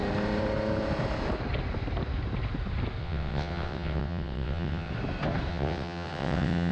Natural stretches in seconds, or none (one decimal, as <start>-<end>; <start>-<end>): 0.0-3.0; 4.9-5.5